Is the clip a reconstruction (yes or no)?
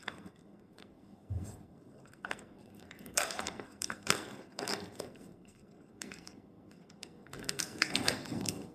yes